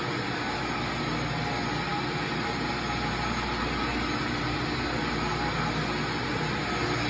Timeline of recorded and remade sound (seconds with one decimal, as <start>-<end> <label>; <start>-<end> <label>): 0.0-7.1 recorded

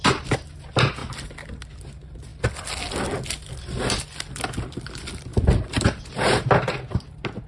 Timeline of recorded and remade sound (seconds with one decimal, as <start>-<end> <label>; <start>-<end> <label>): 0.0-7.5 recorded

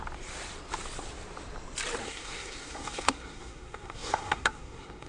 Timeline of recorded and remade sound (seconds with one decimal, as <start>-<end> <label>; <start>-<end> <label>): 0.0-2.0 recorded; 2.0-5.1 remade

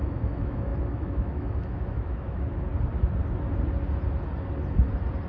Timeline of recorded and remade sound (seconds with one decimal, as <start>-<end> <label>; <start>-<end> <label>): 0.0-2.7 remade; 2.7-5.3 recorded

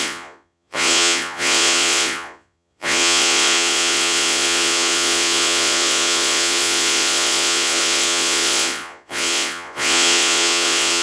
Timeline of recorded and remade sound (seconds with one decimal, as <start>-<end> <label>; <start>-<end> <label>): 0.0-11.0 remade

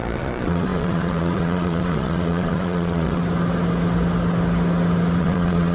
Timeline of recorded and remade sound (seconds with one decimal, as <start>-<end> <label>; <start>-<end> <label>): 0.0-3.2 remade; 3.2-5.2 recorded; 5.2-5.7 remade

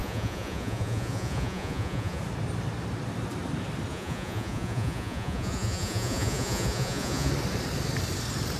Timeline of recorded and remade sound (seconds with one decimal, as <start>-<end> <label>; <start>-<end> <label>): 0.0-2.2 remade; 2.2-3.9 recorded; 3.9-7.3 remade; 7.3-8.6 recorded